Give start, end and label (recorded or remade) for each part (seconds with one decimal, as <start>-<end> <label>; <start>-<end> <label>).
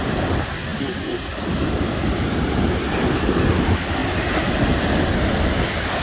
0.0-0.7 recorded; 0.7-2.2 remade; 2.2-6.0 recorded